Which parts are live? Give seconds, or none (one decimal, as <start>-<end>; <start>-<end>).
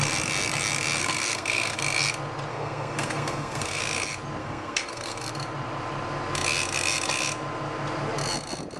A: 0.0-1.0; 1.8-2.5; 3.8-4.4; 5.3-8.8